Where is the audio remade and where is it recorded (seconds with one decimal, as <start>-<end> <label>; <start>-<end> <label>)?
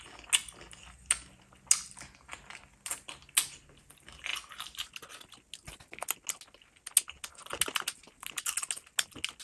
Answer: 0.0-9.4 recorded